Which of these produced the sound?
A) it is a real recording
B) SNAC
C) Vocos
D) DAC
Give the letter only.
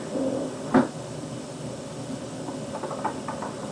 A